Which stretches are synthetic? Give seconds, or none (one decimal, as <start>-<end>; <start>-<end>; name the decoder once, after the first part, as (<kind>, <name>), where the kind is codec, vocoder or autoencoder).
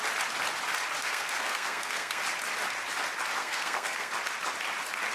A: 1.0-2.2 (codec, SNAC); 3.4-4.1